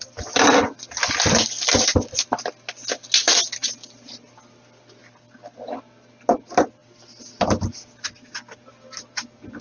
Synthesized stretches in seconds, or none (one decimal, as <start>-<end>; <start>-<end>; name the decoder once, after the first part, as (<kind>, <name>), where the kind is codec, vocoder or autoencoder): none